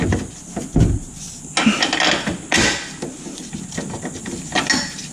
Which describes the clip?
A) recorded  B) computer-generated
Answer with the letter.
A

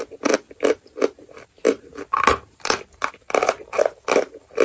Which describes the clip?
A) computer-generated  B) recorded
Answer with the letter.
B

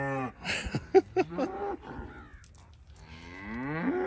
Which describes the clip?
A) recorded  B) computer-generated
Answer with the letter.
A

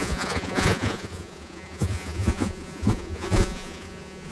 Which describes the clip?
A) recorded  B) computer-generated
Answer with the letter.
B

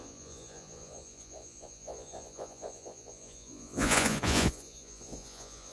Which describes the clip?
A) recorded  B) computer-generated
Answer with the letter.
B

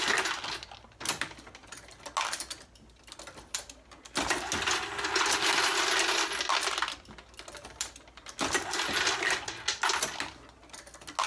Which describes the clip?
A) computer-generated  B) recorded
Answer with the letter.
B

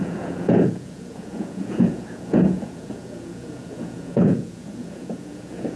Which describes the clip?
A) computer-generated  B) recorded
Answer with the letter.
A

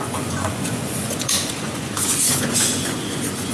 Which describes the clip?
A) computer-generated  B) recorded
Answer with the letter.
A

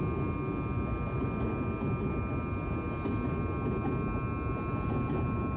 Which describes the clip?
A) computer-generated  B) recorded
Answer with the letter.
B